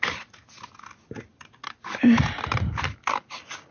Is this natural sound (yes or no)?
yes